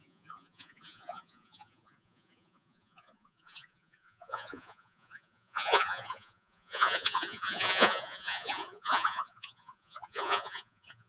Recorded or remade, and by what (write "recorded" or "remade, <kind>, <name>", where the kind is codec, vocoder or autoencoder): remade, vocoder, Vocos